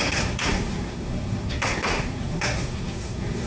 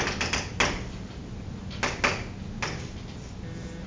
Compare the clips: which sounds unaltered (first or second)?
second